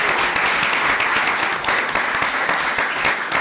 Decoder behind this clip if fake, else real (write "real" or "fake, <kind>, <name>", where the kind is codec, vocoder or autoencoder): real